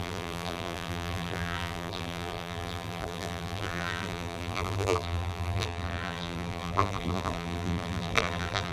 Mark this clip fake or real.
fake